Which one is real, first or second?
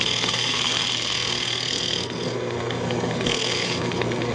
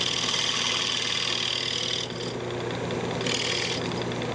second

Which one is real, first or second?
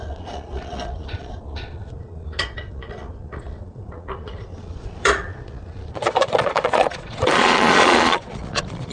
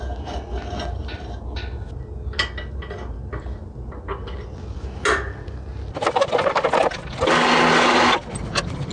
second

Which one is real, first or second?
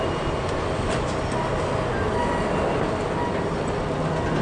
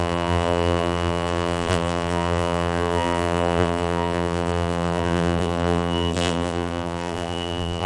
first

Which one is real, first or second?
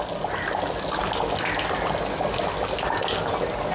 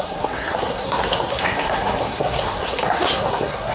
first